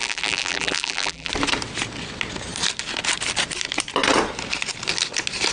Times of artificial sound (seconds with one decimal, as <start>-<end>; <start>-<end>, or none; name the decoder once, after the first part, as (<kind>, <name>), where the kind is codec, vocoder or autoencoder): 0.0-1.3 (vocoder, BigVGAN v2)